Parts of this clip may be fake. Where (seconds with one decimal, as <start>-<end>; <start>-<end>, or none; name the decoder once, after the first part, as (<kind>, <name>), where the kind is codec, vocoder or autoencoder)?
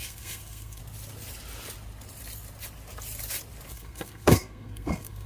0.0-0.8 (codec, SNAC); 3.7-5.3